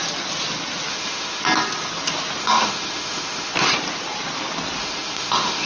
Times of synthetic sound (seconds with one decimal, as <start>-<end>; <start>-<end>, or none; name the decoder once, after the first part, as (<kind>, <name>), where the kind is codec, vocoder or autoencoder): 0.9-1.4 (autoencoder, DAC-VAE); 2.4-3.5; 4.8-5.7